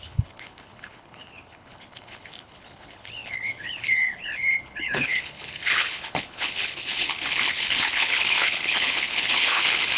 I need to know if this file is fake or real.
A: fake